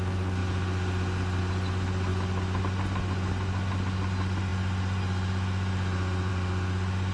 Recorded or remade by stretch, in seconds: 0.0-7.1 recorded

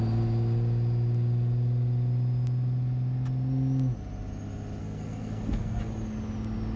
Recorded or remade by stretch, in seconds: 0.0-4.8 recorded; 4.8-5.8 remade; 5.8-6.8 recorded

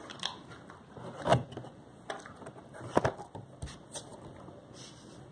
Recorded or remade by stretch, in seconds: 0.0-5.3 recorded

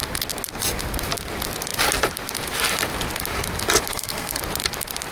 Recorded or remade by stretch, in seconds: 0.0-3.9 recorded; 3.9-4.4 remade; 4.4-5.1 recorded